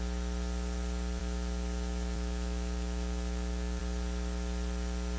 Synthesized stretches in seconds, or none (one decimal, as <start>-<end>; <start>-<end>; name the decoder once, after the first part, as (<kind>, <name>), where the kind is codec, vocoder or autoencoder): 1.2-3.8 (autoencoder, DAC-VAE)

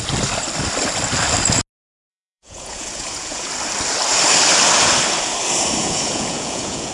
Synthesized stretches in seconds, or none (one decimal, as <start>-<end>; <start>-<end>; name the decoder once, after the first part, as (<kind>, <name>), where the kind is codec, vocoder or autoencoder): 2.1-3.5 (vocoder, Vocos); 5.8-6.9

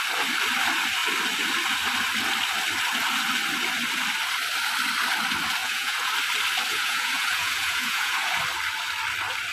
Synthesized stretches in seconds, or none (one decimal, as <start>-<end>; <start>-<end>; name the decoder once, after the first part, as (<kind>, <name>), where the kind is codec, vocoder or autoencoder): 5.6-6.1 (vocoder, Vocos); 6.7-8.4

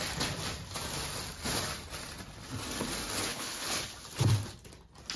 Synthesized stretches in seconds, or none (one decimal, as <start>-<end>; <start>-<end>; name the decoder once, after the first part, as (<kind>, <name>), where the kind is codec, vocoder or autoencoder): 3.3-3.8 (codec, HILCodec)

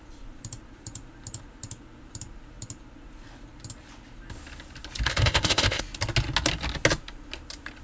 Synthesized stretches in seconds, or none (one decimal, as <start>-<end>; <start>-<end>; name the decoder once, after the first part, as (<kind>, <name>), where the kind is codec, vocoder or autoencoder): 5.1-5.8 (codec, ZipCodec)

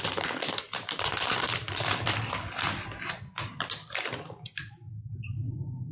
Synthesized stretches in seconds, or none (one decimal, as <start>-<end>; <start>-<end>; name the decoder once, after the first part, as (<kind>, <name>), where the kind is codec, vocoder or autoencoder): 0.0-5.9 (vocoder, BigVGAN v2)

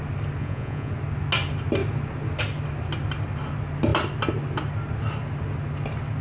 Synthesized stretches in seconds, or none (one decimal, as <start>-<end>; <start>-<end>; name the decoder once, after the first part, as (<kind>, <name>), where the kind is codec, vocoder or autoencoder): 0.4-0.9 (vocoder, Vocos)

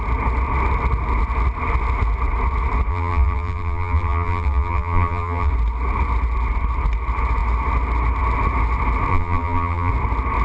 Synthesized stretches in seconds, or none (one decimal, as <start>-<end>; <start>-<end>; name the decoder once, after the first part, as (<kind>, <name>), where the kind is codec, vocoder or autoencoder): 2.9-5.5 (vocoder, BigVGAN v2); 9.1-9.9